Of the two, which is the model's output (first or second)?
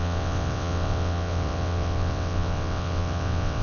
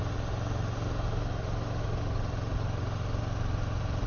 first